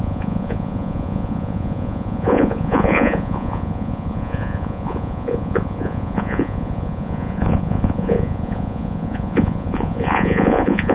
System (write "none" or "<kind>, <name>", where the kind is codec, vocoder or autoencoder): vocoder, Vocos